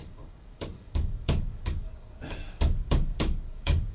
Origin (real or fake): fake